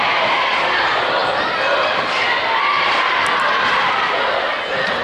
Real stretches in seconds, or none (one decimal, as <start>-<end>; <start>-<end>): 0.0-5.0